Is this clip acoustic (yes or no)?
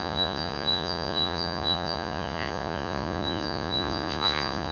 no